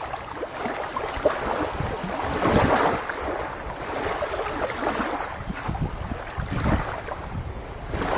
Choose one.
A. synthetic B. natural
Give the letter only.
B